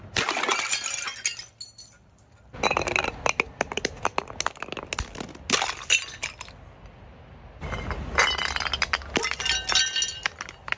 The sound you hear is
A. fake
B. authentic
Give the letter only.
B